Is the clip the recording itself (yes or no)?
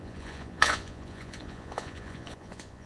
no